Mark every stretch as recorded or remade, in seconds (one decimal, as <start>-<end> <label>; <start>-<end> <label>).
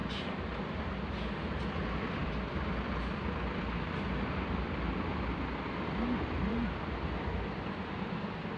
0.0-8.6 recorded